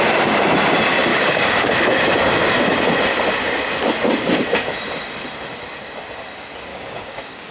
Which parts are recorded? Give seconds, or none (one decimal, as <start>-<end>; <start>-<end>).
0.0-1.1; 1.8-6.7